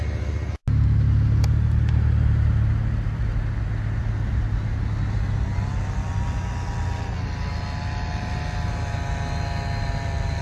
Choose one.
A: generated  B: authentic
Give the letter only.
B